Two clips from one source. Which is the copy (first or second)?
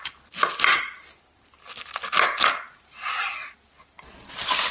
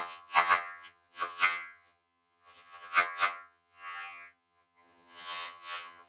second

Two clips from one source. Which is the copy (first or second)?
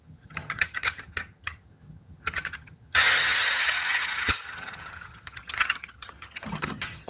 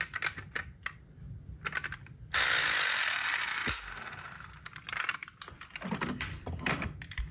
first